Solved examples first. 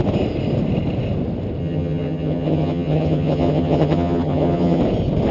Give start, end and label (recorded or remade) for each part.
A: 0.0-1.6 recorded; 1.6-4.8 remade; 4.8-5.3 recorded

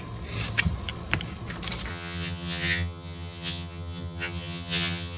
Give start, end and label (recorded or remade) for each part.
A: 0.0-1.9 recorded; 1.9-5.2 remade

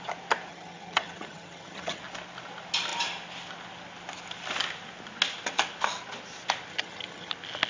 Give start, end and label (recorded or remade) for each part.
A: 0.0-0.5 recorded; 0.5-2.0 remade; 2.0-6.7 recorded; 6.7-7.3 remade; 7.3-7.7 recorded

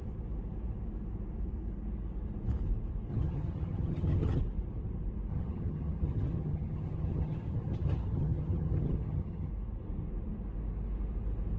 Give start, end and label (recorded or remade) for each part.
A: 0.0-3.1 recorded; 3.1-4.4 remade; 4.4-5.3 recorded; 5.3-9.5 remade; 9.5-11.6 recorded